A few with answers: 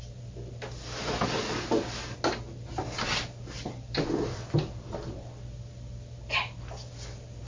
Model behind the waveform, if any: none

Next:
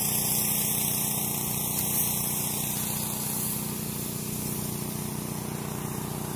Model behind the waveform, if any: none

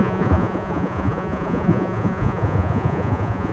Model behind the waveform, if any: vocoder, Vocos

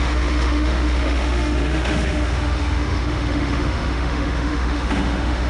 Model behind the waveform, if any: autoencoder, DAC-VAE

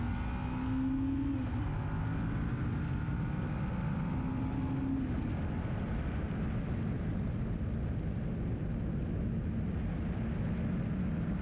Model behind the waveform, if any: none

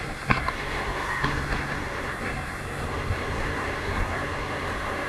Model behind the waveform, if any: codec, SNAC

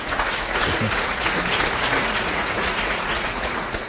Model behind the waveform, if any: vocoder, Vocos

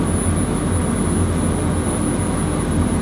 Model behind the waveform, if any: none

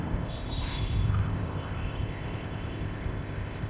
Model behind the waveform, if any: codec, ZipCodec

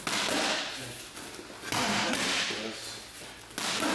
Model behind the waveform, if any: none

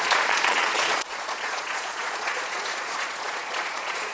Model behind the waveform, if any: vocoder, Vocos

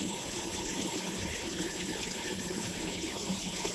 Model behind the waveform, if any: codec, HILCodec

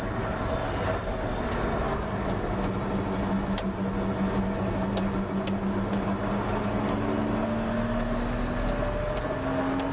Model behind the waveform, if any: none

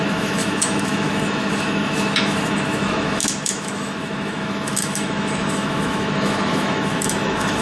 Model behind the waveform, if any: autoencoder, DAC-VAE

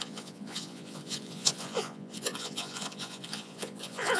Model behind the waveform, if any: vocoder, Vocos